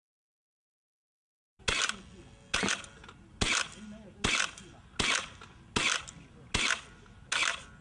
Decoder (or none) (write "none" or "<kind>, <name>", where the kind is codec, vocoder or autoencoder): none